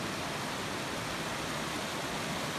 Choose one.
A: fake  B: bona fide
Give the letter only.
B